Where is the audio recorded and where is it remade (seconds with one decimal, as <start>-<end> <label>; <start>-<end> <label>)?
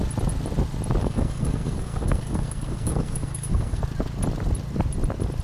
0.0-1.0 recorded; 1.0-3.8 remade; 3.8-5.4 recorded